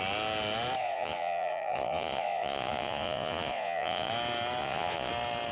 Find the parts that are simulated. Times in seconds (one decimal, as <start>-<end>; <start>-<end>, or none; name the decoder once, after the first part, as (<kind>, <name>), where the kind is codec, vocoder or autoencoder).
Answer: 0.8-4.1 (vocoder, Vocos); 4.6-5.1